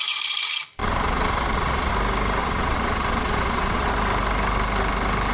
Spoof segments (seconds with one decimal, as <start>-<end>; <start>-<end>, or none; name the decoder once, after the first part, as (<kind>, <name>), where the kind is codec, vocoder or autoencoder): 0.8-1.9 (vocoder, Vocos); 2.4-3.9